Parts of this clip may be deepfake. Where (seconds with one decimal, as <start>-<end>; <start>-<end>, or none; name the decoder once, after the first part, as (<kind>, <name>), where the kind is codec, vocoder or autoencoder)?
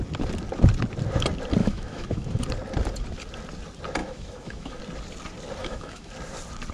1.6-2.4 (autoencoder, DAC-VAE); 4.0-4.8; 5.6-6.1